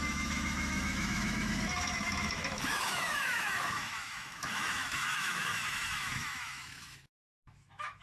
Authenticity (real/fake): fake